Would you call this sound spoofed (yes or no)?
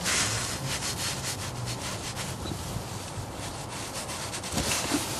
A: no